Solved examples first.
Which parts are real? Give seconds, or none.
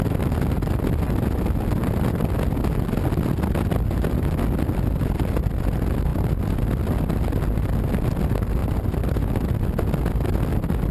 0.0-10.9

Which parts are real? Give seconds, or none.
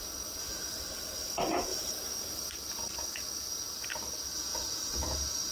0.0-5.5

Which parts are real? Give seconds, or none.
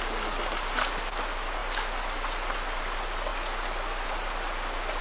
0.0-5.0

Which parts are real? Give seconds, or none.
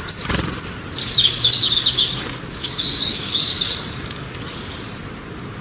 0.0-1.0; 4.4-5.6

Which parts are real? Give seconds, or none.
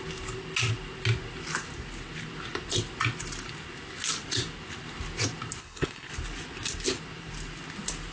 0.0-5.6; 6.1-8.1